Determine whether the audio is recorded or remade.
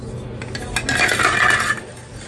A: recorded